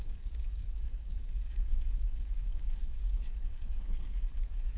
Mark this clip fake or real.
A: fake